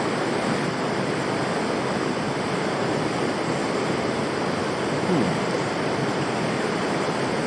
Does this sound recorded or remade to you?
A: recorded